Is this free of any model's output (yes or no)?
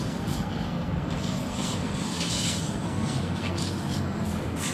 no